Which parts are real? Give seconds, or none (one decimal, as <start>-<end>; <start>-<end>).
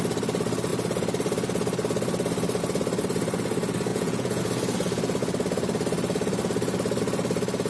0.0-3.9; 4.4-7.7